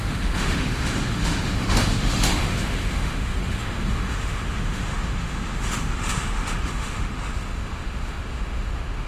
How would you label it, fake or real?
fake